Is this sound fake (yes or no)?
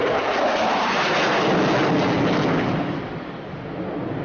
no